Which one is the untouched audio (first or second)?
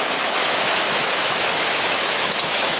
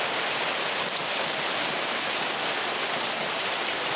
second